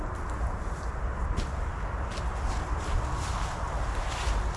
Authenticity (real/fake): real